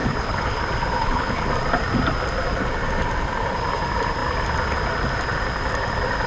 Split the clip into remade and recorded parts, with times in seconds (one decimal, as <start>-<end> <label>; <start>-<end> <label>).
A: 0.0-0.6 remade; 0.6-1.0 recorded; 1.0-1.5 remade; 1.5-6.3 recorded